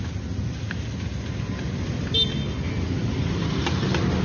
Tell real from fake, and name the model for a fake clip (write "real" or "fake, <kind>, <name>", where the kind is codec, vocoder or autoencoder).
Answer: real